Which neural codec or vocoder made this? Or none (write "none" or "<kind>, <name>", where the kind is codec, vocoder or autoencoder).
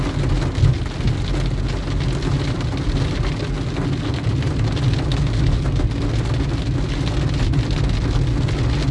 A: none